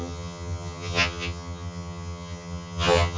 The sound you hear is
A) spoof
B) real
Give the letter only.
A